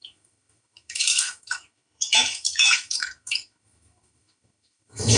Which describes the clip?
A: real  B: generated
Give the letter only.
B